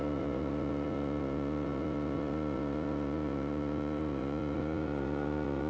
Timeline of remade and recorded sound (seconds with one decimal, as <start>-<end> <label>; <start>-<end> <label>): 0.0-5.7 remade